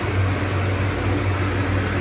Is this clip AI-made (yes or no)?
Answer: no